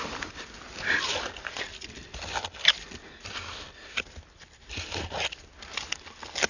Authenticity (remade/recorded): recorded